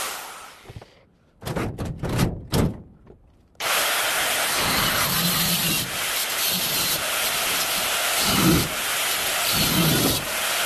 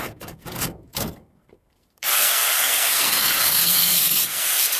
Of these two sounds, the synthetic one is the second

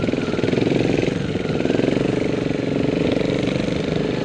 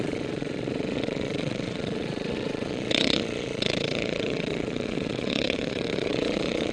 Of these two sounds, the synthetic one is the second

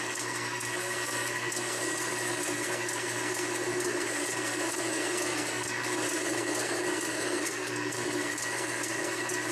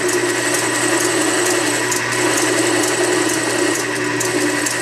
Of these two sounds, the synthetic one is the first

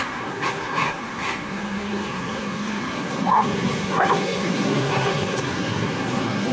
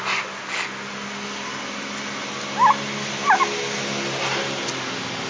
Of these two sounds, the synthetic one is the first